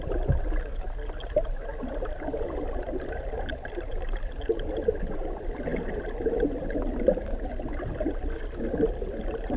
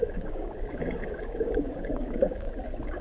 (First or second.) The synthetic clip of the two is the second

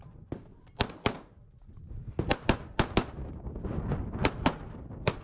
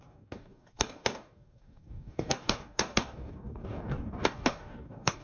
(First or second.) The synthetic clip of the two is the second